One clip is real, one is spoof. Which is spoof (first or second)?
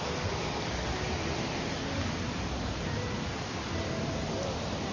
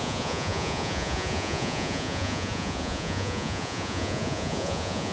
second